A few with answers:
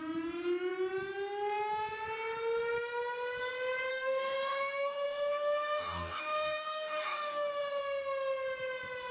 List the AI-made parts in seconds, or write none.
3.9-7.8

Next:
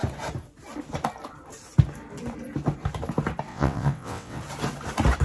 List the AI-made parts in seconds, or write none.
3.5-4.4

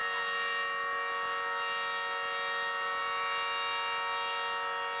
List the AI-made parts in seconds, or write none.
none

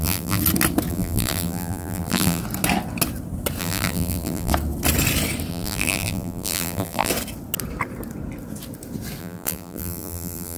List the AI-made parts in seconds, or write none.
0.0-0.4; 0.9-2.4; 3.6-4.5; 5.5-7.1; 9.2-10.6